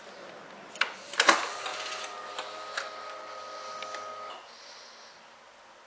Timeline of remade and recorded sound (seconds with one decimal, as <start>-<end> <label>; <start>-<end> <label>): 0.0-5.9 recorded